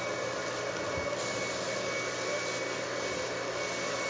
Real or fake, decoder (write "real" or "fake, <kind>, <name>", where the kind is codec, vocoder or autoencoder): real